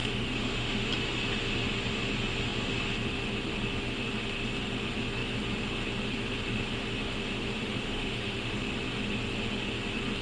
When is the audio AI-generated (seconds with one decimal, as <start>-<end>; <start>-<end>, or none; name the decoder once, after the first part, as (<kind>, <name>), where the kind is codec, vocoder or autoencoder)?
0.0-0.9 (autoencoder, DAC-VAE); 7.6-8.6